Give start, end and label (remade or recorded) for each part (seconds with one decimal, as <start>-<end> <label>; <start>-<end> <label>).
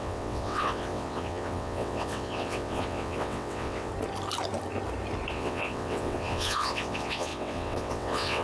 0.0-3.9 remade; 3.9-5.3 recorded; 5.3-8.4 remade